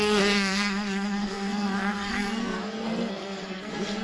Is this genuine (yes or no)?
no